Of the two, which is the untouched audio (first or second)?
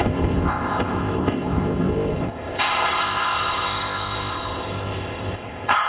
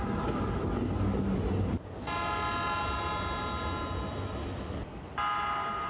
second